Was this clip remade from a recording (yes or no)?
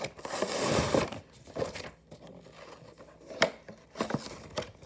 no